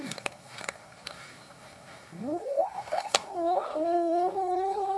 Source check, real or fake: fake